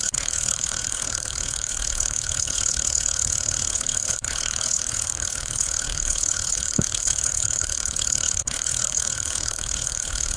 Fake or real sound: fake